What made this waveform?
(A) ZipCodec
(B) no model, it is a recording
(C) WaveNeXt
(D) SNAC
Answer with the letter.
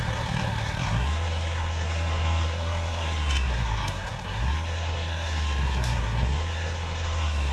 D